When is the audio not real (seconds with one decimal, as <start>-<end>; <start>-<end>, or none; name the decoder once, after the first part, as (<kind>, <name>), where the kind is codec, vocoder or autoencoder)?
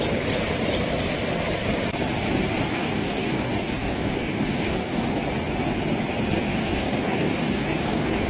2.7-5.2 (codec, DAC); 6.5-8.3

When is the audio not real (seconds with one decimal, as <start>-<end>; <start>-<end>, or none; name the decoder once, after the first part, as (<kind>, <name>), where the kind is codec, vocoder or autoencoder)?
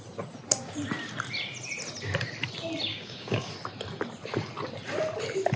2.9-3.5 (codec, DAC)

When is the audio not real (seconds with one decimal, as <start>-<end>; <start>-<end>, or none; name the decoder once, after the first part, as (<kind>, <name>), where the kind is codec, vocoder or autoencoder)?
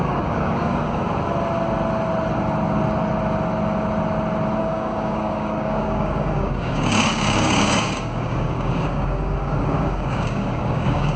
0.0-1.0 (codec, DAC); 4.6-11.2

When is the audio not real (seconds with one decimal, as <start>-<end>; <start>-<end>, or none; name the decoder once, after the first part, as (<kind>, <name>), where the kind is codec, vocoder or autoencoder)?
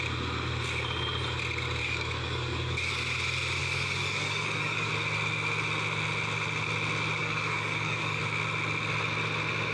1.8-2.9 (codec, DAC); 3.6-4.9; 7.2-8.2